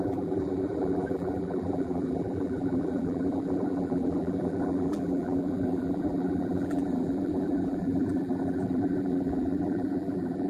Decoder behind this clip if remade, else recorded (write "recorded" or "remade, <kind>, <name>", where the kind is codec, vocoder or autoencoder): remade, vocoder, BigVGAN v2